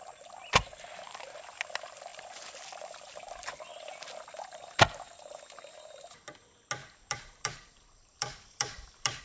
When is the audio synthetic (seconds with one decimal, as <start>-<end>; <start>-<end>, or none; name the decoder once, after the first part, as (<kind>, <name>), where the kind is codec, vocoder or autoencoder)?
2.1-3.1 (vocoder, BigVGAN v2); 6.8-9.2